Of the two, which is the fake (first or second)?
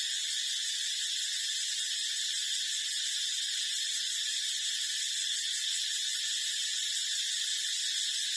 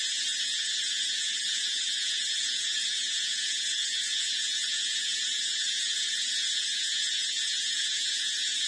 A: second